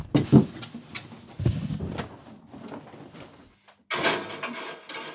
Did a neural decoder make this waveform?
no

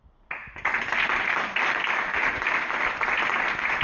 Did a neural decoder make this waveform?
no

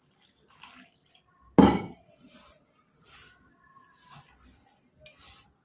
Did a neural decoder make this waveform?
no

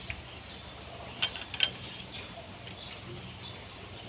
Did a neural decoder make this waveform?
no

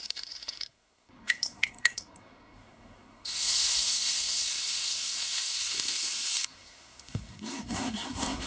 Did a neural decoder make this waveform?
yes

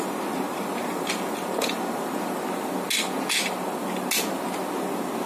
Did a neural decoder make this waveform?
no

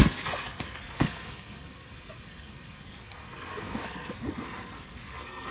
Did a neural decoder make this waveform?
yes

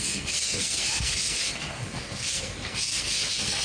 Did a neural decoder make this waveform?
yes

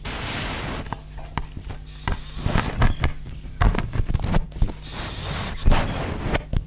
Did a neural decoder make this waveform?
no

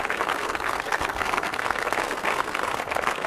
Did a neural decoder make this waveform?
yes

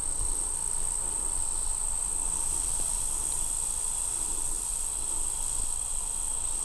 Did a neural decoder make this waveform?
no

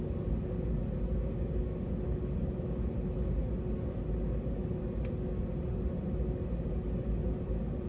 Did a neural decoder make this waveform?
no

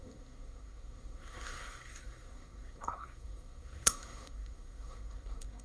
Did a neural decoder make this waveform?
yes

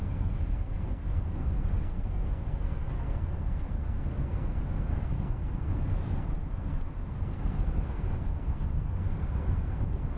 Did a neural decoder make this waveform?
yes